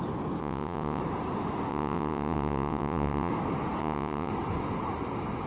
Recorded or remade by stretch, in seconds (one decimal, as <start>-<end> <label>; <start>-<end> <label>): 0.0-0.4 recorded; 0.4-1.0 remade; 1.0-1.7 recorded; 1.7-3.3 remade; 3.3-3.8 recorded; 3.8-4.3 remade; 4.3-5.5 recorded